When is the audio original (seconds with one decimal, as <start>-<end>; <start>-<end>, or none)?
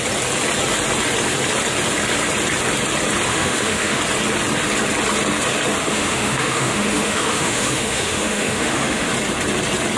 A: 0.0-3.3; 4.0-5.8; 9.1-10.0